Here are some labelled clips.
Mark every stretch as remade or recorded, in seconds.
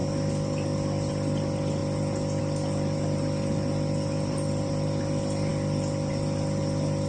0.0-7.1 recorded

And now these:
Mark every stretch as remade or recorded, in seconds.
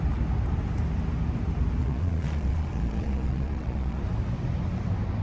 0.0-1.8 recorded; 1.8-4.0 remade; 4.0-5.2 recorded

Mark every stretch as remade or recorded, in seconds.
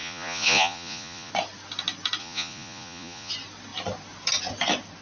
0.0-1.3 remade; 1.3-2.2 recorded; 2.2-3.3 remade; 3.3-5.0 recorded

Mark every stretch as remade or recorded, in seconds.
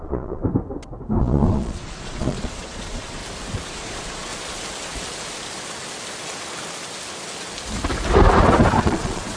0.0-0.4 remade; 0.4-1.2 recorded; 1.2-3.2 remade; 3.2-3.7 recorded; 3.7-4.3 remade; 4.3-8.8 recorded; 8.8-9.4 remade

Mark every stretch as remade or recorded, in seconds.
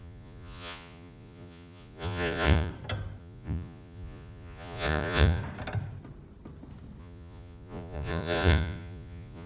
0.0-2.7 remade; 2.7-3.2 recorded; 3.2-5.4 remade; 5.4-7.0 recorded; 7.0-9.5 remade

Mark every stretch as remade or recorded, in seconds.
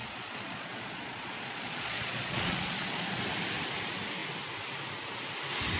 0.0-3.2 remade; 3.2-5.8 recorded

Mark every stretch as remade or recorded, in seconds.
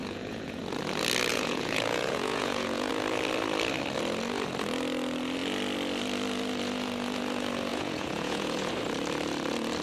0.0-0.6 remade; 0.6-1.3 recorded; 1.3-2.9 remade; 2.9-7.7 recorded; 7.7-8.7 remade; 8.7-9.8 recorded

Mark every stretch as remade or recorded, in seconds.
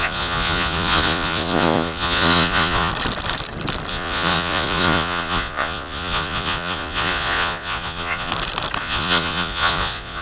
0.0-2.9 remade; 2.9-3.9 recorded; 3.9-8.3 remade; 8.3-8.8 recorded; 8.8-10.2 remade